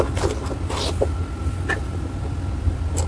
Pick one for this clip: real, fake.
real